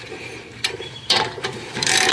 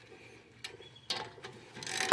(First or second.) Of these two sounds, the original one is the second